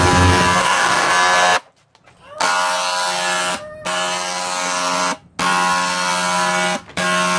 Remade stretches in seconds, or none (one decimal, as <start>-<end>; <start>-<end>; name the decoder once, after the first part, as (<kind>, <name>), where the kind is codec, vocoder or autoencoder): 0.6-1.1 (codec, DAC)